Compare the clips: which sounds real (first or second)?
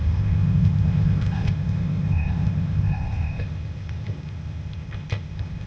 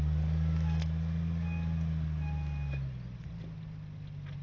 second